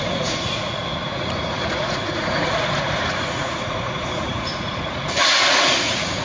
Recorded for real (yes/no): no